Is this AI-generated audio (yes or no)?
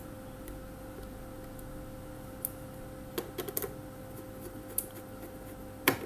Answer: no